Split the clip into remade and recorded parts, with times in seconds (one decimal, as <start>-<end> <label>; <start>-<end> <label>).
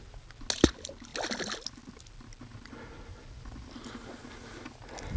0.0-5.2 recorded